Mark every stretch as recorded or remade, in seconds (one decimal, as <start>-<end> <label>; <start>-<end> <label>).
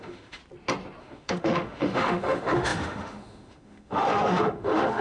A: 0.0-0.4 remade; 0.4-1.0 recorded; 1.0-5.0 remade